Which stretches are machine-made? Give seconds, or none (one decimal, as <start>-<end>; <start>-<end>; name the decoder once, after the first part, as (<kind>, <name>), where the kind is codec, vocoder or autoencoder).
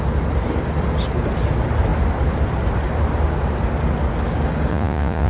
4.7-5.3 (vocoder, Vocos)